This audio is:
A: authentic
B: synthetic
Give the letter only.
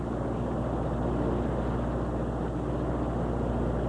A